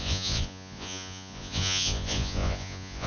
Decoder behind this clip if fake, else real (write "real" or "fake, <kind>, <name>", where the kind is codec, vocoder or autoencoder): fake, vocoder, Vocos